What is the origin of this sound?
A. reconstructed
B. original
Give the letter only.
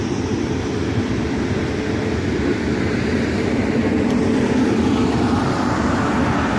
B